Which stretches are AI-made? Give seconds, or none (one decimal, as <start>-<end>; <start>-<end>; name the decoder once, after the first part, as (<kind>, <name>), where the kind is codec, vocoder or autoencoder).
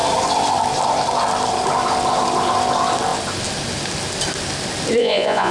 5.0-5.5 (vocoder, Vocos)